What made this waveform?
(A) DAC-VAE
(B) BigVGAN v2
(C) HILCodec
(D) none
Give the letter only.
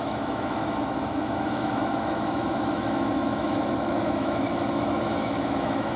A